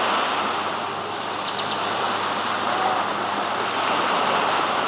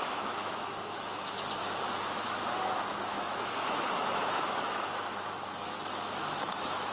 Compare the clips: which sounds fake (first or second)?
second